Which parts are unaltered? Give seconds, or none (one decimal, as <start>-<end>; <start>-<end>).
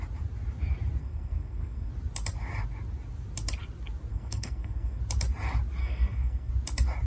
0.0-1.0; 1.9-4.1; 5.0-5.8; 6.5-7.1